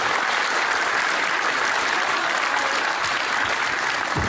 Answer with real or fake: real